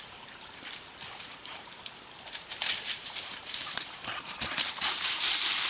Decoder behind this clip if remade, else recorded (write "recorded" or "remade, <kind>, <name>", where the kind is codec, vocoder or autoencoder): remade, vocoder, BigVGAN v2